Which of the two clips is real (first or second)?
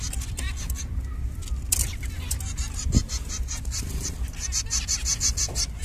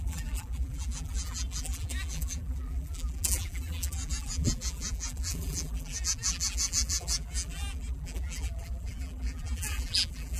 first